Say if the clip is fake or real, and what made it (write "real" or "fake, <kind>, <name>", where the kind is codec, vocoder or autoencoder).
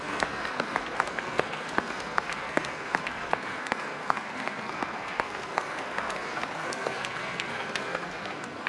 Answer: fake, codec, SNAC